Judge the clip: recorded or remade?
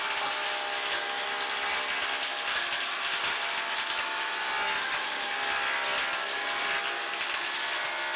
recorded